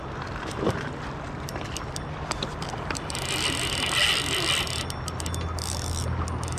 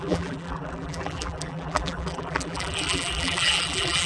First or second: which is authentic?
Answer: first